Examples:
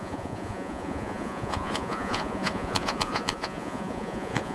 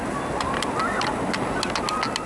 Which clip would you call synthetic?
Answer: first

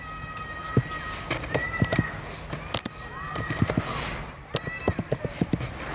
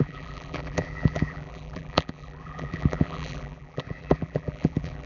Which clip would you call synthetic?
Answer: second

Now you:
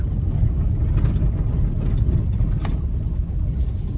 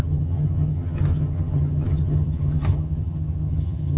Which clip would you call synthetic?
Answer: second